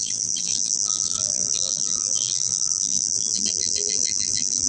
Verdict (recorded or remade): remade